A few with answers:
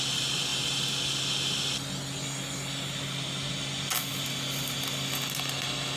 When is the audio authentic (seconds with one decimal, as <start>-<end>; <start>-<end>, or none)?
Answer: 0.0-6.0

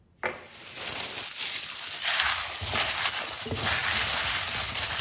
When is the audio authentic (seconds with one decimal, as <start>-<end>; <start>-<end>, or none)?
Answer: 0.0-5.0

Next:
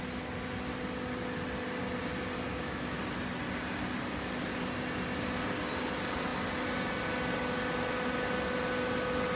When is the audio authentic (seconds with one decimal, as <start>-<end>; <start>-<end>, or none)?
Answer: 0.0-2.5; 3.0-9.4

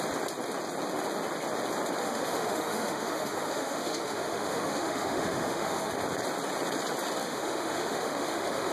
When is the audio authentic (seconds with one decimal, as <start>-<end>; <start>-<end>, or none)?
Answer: 0.0-2.0; 5.9-7.2

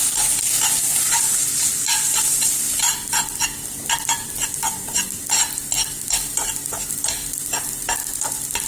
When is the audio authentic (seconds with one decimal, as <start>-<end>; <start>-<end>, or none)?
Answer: 0.0-8.7

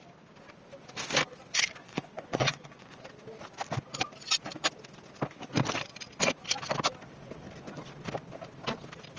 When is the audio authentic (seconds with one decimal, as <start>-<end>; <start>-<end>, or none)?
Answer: 0.0-1.8; 3.0-9.2

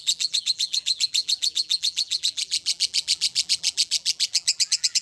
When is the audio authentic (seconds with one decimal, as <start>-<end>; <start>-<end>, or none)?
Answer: none